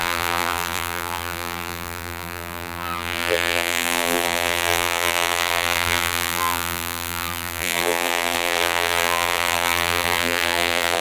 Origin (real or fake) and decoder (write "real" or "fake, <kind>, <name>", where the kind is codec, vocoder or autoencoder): fake, vocoder, BigVGAN v2